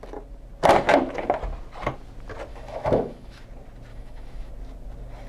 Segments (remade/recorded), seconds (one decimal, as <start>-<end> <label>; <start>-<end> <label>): 0.0-2.5 recorded; 2.5-3.4 remade; 3.4-3.9 recorded; 3.9-4.5 remade; 4.5-5.3 recorded